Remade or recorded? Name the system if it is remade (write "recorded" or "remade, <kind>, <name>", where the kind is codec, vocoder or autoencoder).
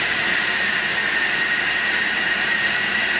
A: remade, vocoder, BigVGAN v2